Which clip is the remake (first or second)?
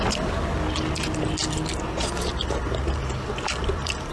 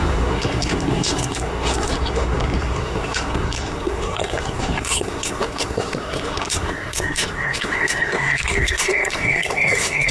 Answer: second